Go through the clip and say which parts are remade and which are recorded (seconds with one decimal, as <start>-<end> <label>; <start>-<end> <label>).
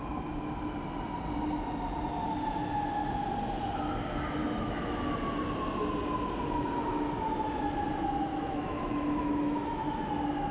0.0-4.4 recorded; 4.4-5.1 remade; 5.1-8.3 recorded; 8.3-10.0 remade; 10.0-10.5 recorded